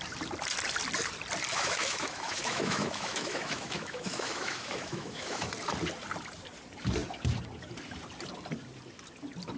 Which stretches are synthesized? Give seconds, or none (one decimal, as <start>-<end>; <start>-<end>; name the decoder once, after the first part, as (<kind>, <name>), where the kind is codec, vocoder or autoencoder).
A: 1.5-5.5 (autoencoder, DAC-VAE)